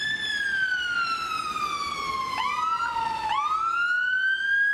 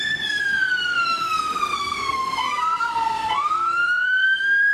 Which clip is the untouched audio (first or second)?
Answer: first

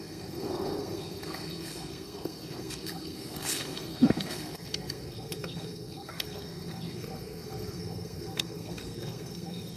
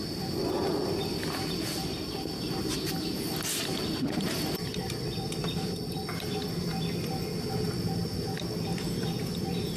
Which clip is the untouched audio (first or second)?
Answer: second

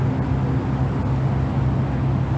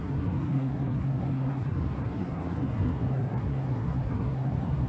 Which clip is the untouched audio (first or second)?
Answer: first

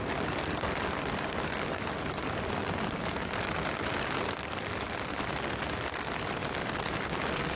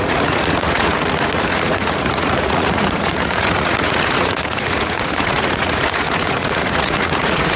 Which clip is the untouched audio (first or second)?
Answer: first